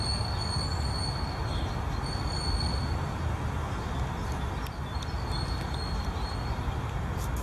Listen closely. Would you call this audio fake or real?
real